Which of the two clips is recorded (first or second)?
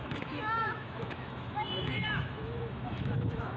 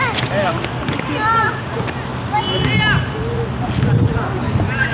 second